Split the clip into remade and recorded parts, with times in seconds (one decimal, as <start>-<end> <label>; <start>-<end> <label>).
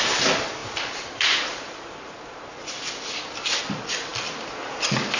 0.0-5.2 recorded